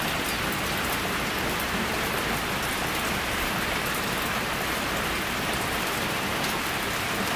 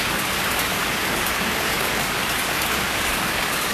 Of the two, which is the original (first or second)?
first